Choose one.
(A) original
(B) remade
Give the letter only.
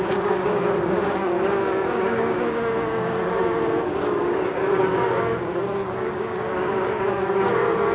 B